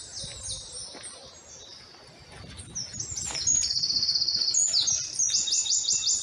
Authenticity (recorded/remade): recorded